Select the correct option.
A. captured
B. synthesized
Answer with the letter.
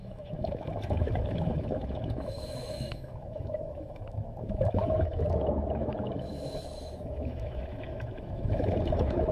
B